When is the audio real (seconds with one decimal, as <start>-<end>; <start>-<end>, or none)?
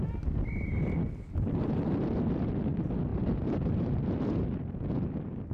0.0-5.5